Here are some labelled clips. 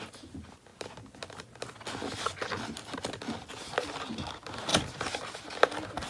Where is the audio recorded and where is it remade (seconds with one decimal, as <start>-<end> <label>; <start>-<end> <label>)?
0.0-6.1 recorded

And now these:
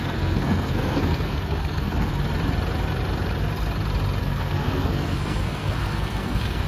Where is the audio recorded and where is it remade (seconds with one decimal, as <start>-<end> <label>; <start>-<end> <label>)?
0.0-2.1 remade; 2.1-4.2 recorded; 4.2-6.7 remade

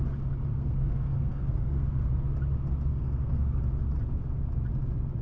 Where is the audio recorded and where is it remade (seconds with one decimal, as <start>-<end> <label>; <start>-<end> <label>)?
0.0-0.5 recorded; 0.5-2.1 remade; 2.1-2.9 recorded; 2.9-3.6 remade; 3.6-5.2 recorded

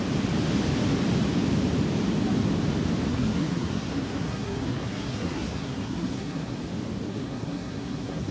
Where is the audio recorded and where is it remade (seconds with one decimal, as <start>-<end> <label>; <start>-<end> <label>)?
0.0-3.1 recorded; 3.1-6.6 remade; 6.6-7.1 recorded; 7.1-8.3 remade

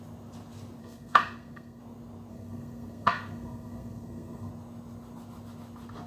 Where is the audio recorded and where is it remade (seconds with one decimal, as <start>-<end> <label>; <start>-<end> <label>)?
0.0-0.8 recorded; 0.8-1.8 remade; 1.8-2.3 recorded; 2.3-4.5 remade; 4.5-6.1 recorded